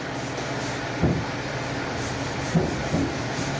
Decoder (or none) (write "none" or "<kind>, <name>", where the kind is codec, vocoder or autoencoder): none